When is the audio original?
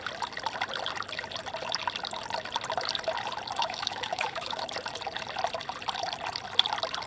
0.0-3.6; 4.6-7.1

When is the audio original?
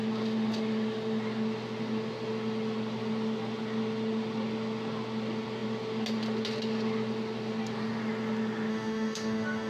0.0-8.7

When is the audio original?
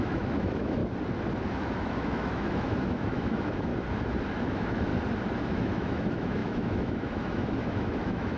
0.8-1.5; 3.7-4.4; 4.9-5.4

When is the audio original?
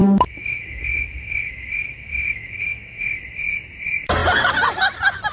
3.2-5.3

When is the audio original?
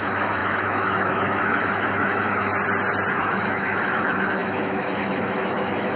2.5-3.1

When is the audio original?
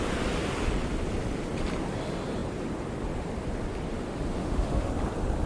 0.0-4.4; 4.9-5.5